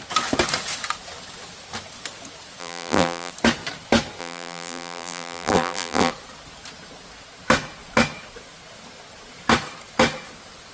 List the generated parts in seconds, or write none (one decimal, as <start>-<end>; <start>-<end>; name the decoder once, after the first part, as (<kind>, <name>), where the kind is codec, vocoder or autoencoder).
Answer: 2.6-3.3 (vocoder, BigVGAN v2); 4.2-6.1